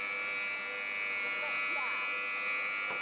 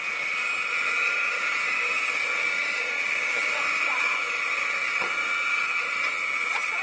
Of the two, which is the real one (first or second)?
first